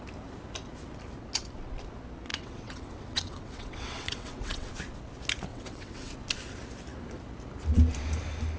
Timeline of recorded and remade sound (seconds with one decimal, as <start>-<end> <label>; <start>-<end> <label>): 0.0-2.3 recorded; 2.3-4.7 remade; 4.7-5.5 recorded; 5.5-6.1 remade; 6.1-8.6 recorded